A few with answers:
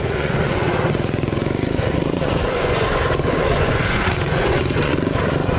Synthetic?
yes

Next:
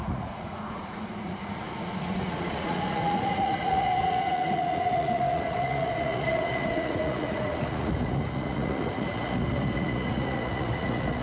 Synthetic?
yes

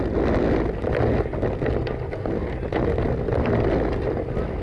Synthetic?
no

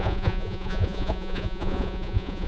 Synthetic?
yes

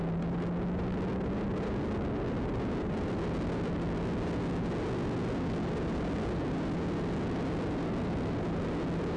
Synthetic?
no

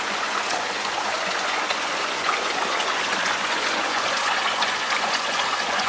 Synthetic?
yes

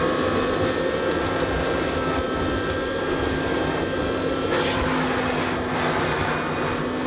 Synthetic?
no